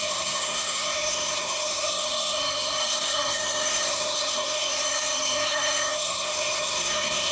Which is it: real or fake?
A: fake